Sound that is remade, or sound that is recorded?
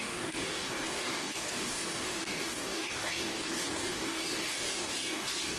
remade